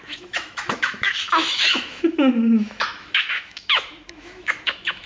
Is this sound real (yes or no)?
no